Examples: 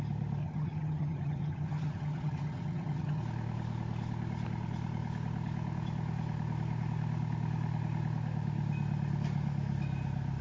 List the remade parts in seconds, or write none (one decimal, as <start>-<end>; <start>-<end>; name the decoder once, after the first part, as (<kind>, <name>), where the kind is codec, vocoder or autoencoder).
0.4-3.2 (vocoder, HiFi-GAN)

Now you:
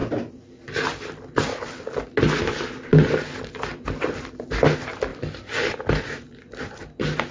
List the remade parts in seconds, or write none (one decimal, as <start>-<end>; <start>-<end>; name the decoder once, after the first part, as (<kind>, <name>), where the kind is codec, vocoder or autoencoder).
none

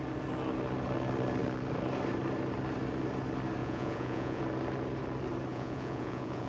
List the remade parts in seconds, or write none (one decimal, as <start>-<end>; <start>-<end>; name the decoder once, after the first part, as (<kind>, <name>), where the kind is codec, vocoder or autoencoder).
3.6-4.4 (vocoder, Vocos); 5.5-6.5

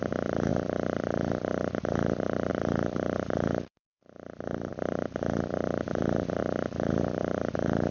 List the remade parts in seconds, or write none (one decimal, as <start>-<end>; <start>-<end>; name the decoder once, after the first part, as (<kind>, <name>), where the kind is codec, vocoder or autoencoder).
none

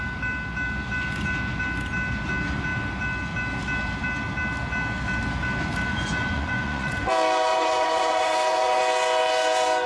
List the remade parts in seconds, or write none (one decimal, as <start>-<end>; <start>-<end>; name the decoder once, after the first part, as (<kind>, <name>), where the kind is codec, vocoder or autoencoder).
5.9-7.0 (vocoder, Vocos); 7.5-8.8